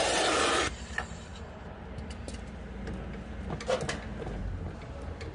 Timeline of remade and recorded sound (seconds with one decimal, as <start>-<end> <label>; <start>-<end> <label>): 0.0-5.3 recorded